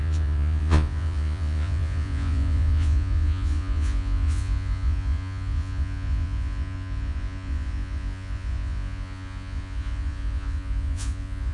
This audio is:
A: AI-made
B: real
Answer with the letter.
A